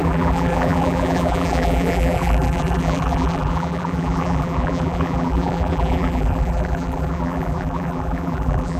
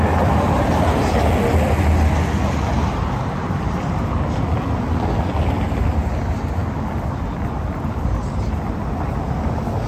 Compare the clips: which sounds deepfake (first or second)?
first